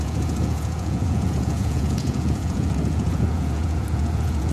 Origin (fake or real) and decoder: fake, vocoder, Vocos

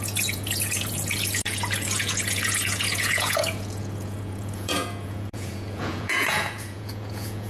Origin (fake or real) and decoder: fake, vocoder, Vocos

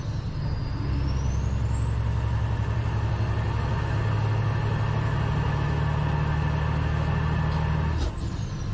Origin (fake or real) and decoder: real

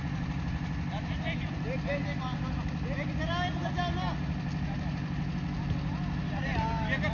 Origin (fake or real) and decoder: real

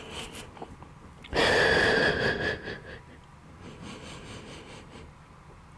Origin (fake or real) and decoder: real